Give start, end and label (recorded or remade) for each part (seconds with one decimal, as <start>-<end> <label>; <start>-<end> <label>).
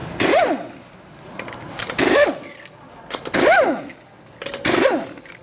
0.0-1.5 remade; 1.5-2.5 recorded; 2.5-3.2 remade; 3.2-5.4 recorded